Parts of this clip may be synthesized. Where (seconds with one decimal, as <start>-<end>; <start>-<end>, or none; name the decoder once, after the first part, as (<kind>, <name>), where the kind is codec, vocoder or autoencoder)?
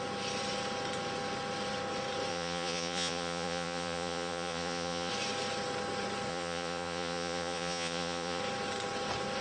2.3-5.1 (vocoder, Vocos); 6.3-8.4